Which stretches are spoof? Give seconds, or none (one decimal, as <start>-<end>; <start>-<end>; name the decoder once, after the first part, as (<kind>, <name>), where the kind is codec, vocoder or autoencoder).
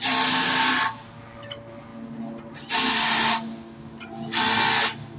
none